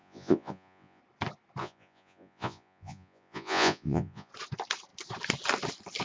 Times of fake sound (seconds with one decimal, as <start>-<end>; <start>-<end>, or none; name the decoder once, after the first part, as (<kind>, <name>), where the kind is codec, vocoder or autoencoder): 0.0-1.0 (vocoder, Vocos); 1.6-4.3